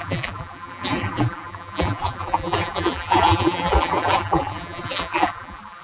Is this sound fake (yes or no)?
yes